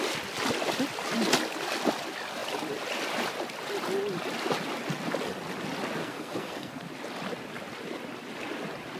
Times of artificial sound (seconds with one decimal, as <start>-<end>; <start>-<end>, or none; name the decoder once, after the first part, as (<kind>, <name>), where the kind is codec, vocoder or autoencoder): 6.0-6.9 (codec, SNAC)